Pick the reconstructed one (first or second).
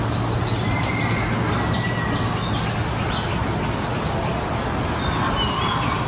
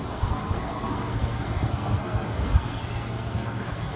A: second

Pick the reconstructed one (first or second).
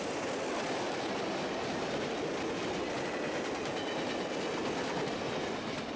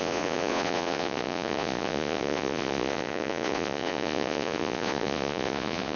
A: second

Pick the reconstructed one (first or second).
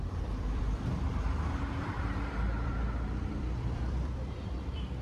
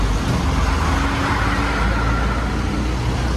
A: first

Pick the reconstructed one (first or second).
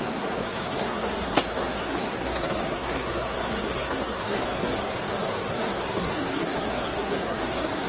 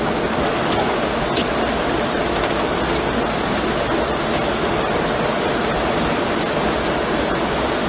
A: first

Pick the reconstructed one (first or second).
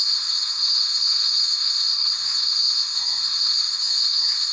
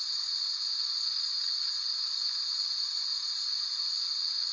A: first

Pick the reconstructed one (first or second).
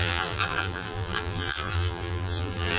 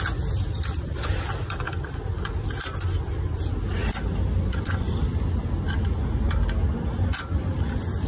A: first